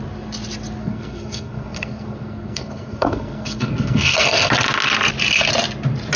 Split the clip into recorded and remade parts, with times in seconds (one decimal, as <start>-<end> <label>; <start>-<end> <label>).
0.0-0.8 recorded; 0.8-4.5 remade; 4.5-6.2 recorded